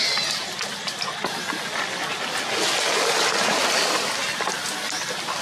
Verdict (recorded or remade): recorded